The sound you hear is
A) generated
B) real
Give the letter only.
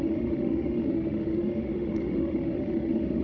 A